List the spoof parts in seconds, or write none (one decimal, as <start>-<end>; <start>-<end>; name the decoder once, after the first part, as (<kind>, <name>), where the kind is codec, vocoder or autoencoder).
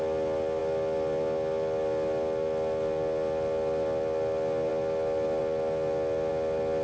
none